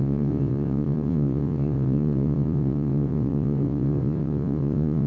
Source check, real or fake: fake